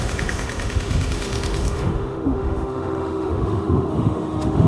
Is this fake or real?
fake